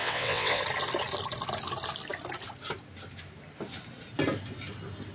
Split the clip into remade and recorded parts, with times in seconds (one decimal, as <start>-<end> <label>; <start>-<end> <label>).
0.0-0.6 remade; 0.6-5.1 recorded